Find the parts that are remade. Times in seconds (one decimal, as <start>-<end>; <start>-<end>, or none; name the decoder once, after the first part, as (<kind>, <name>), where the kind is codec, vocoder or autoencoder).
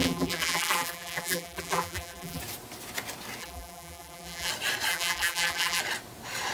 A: 0.0-2.4 (vocoder, BigVGAN v2); 3.4-4.5; 4.9-5.8